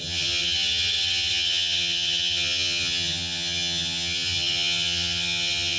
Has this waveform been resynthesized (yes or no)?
yes